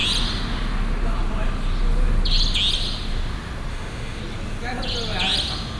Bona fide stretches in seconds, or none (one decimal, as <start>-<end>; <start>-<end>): 0.0-3.7; 4.2-5.8